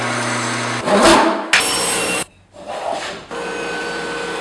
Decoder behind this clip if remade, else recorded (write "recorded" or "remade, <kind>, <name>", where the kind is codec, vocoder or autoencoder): recorded